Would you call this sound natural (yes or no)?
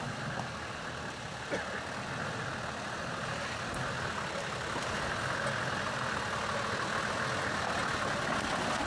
yes